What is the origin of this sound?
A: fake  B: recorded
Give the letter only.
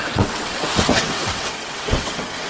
A